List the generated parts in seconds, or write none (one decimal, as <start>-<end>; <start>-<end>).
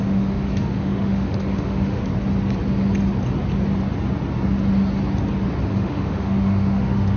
0.0-2.0; 5.7-7.2